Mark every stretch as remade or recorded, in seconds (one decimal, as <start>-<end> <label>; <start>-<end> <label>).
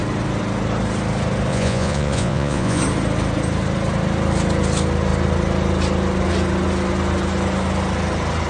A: 0.0-1.5 recorded; 1.5-2.8 remade; 2.8-8.5 recorded